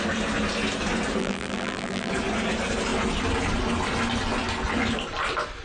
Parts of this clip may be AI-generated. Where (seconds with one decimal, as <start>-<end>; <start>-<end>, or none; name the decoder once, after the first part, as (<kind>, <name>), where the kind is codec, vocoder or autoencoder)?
1.2-2.1 (vocoder, BigVGAN v2)